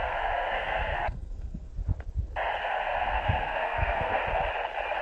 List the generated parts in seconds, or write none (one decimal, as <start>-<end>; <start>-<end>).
0.0-1.7; 2.6-4.2